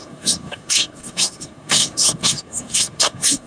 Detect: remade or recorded remade